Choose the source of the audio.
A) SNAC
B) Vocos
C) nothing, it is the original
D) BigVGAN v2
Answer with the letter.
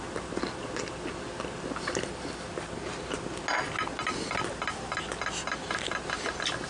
C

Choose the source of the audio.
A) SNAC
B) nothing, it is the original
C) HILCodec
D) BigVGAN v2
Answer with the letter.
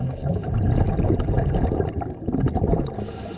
B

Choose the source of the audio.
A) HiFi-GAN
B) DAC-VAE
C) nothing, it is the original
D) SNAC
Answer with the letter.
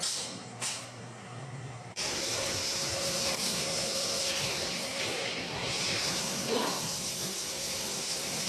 D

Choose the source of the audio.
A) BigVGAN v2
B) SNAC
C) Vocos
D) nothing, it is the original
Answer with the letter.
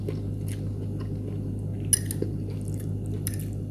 D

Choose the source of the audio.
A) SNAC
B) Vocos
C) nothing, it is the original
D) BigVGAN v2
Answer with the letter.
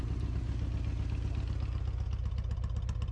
C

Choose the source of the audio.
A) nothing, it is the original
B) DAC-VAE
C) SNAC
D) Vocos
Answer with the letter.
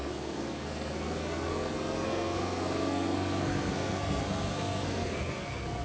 C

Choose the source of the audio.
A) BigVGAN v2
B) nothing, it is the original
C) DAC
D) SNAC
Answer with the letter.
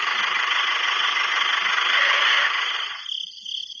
B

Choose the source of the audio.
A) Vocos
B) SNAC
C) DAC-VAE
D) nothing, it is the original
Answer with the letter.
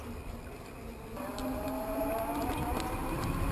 D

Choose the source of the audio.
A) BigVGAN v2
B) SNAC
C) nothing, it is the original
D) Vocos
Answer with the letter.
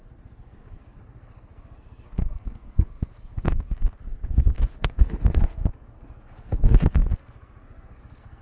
B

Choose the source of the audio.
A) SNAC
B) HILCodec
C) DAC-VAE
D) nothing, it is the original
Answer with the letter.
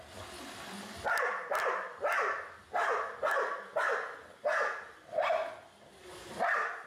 D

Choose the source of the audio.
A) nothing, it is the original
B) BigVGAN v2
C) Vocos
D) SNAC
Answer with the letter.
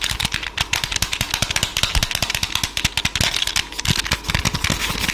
A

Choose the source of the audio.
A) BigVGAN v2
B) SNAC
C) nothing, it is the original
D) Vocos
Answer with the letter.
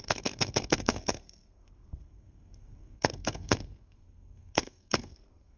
B